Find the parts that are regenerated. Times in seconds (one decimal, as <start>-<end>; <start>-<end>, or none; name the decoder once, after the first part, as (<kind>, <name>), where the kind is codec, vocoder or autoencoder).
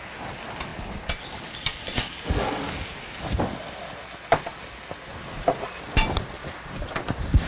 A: none